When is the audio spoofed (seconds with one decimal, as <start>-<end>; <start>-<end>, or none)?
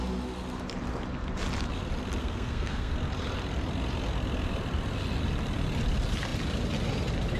2.2-2.9